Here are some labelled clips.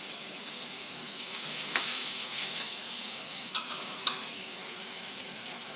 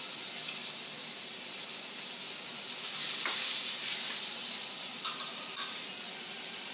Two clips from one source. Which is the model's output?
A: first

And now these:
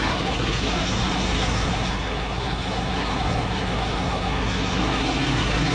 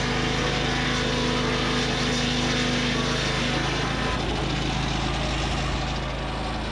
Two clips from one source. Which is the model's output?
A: first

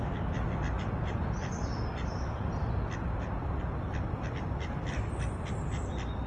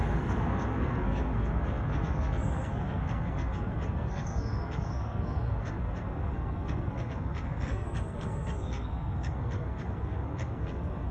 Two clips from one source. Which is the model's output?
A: second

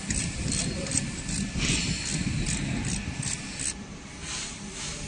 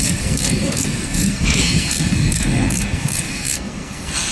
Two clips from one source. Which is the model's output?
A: second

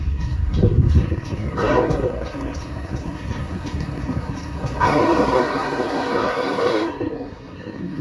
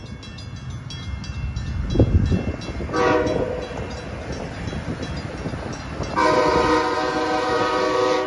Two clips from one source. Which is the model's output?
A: first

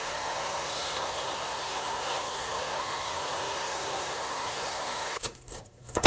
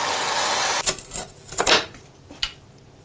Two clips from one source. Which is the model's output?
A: first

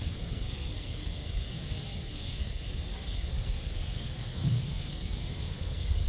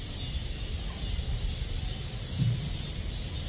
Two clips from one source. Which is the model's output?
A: first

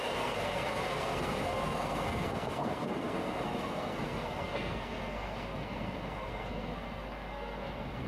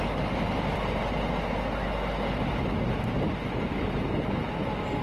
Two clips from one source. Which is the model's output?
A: first